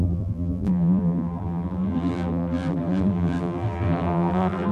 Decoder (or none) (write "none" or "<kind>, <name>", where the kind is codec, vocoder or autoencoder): vocoder, BigVGAN v2